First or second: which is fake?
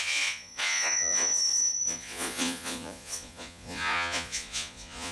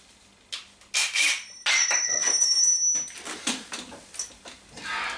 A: first